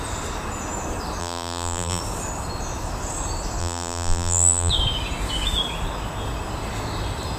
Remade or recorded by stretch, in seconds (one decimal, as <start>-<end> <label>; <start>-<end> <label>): 0.0-1.2 recorded; 1.2-2.0 remade; 2.0-3.6 recorded; 3.6-4.7 remade; 4.7-7.4 recorded

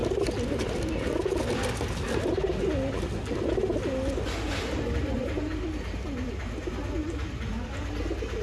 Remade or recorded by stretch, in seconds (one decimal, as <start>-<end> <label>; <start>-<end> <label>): 0.0-1.4 remade; 1.4-7.0 recorded; 7.0-7.7 remade; 7.7-8.4 recorded

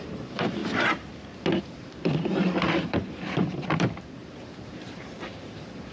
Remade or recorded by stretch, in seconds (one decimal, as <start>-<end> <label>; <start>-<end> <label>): 0.0-0.6 remade; 0.6-1.6 recorded; 1.6-5.9 remade